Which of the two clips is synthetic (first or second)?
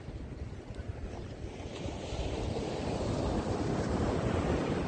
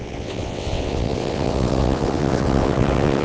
second